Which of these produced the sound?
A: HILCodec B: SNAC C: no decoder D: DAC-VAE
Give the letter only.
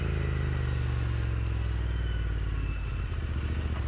C